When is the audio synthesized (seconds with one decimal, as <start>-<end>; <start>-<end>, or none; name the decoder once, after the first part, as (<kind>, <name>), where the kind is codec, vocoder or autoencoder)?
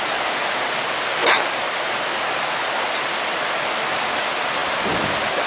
none